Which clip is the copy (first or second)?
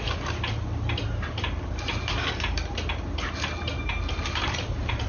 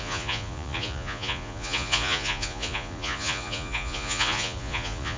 second